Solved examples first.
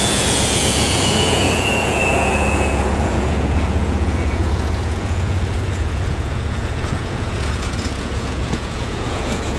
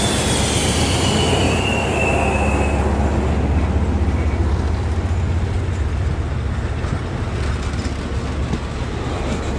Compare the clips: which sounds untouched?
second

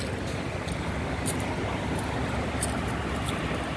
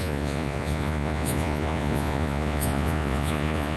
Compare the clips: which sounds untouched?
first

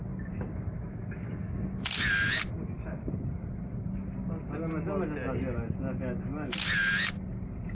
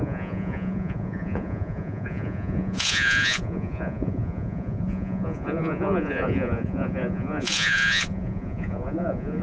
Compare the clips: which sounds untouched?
first